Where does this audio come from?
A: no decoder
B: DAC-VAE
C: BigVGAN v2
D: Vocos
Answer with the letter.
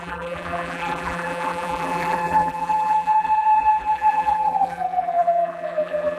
C